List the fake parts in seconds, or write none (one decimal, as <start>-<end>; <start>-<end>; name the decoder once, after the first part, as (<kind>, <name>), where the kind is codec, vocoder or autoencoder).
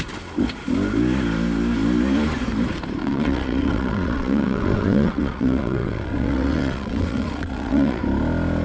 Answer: 3.0-8.0 (vocoder, WaveNeXt)